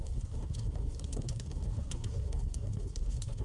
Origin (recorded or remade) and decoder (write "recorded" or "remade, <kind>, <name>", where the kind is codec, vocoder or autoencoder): remade, codec, SNAC